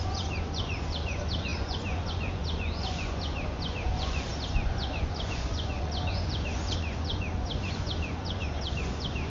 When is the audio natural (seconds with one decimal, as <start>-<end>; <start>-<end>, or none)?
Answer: none